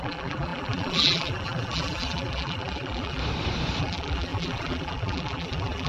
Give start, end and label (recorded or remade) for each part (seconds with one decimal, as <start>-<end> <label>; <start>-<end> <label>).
0.0-3.2 remade; 3.2-3.8 recorded; 3.8-5.9 remade